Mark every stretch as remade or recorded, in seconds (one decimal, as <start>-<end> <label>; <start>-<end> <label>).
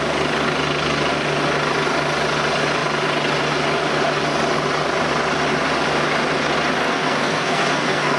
0.0-6.8 recorded; 6.8-8.2 remade